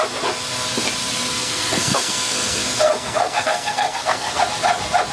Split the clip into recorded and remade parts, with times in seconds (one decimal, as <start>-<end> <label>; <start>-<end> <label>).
0.0-1.3 recorded; 1.3-4.4 remade; 4.4-5.1 recorded